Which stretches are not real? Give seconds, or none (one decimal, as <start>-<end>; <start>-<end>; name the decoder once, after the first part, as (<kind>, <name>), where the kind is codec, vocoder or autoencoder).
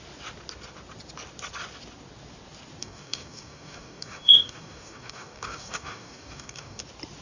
2.8-6.8 (codec, DAC)